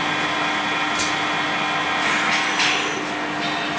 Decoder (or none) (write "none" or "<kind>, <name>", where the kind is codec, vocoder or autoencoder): none